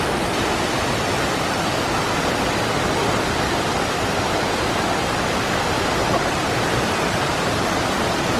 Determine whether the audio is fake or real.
fake